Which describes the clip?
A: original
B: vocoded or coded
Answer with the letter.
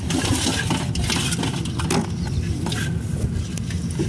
A